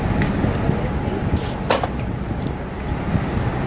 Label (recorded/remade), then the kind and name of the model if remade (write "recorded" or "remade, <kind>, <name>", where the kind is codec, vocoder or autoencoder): recorded